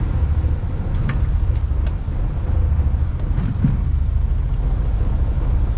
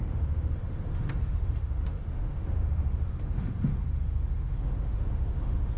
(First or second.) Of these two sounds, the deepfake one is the second